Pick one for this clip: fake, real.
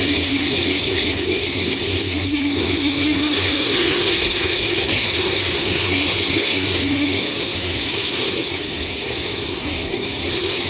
fake